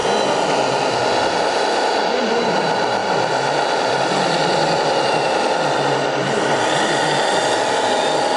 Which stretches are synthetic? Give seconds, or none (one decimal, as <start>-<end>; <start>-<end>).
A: 3.0-5.1